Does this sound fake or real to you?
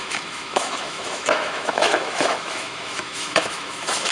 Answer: fake